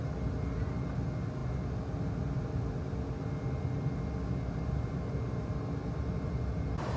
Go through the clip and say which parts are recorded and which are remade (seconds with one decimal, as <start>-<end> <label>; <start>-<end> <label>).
0.0-5.8 recorded; 5.8-7.0 remade